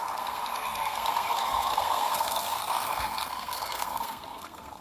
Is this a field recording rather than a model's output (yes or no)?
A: no